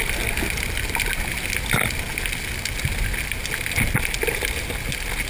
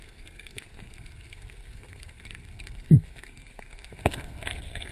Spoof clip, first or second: second